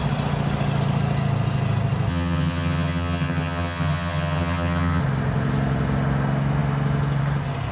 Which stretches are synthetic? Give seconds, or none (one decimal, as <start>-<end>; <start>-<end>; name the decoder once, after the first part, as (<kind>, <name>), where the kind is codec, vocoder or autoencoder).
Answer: 2.1-5.0 (vocoder, HiFi-GAN)